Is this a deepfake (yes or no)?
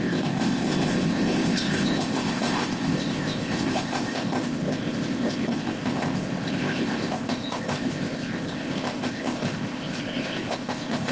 yes